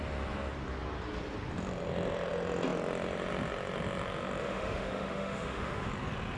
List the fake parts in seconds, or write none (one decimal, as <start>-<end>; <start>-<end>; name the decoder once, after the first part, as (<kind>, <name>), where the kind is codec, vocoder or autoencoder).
4.4-5.9 (autoencoder, DAC-VAE)

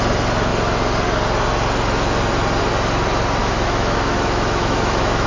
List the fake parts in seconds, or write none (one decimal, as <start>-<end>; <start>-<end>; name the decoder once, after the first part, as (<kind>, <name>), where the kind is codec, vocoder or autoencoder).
3.4-5.3 (autoencoder, DAC-VAE)

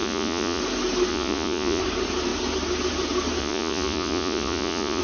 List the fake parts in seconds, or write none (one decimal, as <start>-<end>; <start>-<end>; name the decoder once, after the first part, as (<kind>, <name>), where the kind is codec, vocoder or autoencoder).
0.0-0.6 (vocoder, Vocos); 1.1-1.8; 3.4-5.0

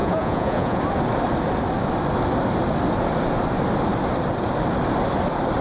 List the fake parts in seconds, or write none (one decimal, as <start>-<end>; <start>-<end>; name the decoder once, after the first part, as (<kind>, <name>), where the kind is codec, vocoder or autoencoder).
0.0-0.8 (vocoder, Vocos)

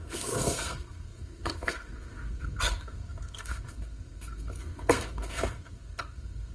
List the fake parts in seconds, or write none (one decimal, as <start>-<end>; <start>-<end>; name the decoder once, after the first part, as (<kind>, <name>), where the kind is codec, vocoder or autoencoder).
0.0-6.5 (codec, SNAC)

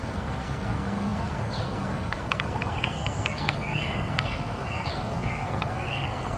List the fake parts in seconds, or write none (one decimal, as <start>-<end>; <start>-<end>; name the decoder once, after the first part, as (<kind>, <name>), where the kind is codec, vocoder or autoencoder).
0.0-6.4 (codec, SNAC)

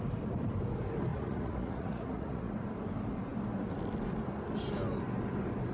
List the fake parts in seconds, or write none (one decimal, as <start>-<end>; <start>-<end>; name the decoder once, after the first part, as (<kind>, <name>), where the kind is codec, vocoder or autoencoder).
1.1-2.5 (vocoder, Vocos)

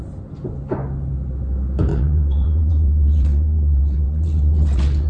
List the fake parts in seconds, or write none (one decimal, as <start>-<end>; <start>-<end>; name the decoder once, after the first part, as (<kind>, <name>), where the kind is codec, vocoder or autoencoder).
1.9-5.1 (vocoder, WaveNeXt)